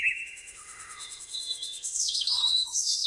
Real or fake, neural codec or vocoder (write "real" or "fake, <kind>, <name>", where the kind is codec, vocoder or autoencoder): fake, autoencoder, DAC-VAE